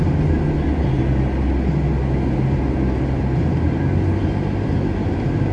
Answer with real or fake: real